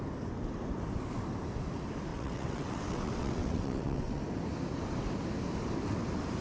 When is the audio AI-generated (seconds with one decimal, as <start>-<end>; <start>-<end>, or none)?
2.1-4.2